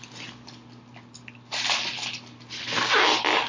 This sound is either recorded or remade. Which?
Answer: recorded